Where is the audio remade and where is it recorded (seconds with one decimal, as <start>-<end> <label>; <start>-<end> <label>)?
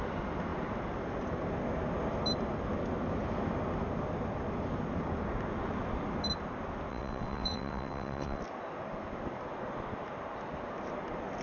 0.0-6.9 recorded; 6.9-8.4 remade; 8.4-11.4 recorded